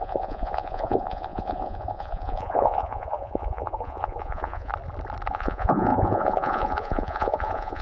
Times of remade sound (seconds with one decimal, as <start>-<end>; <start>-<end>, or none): 0.0-4.7; 5.3-7.8